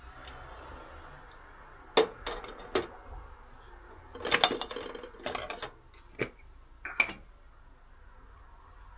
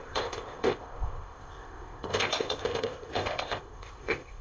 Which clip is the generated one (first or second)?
second